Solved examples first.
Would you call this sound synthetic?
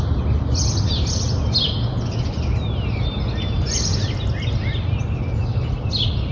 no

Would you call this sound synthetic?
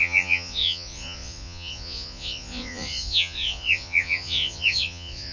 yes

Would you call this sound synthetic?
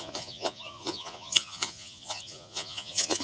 yes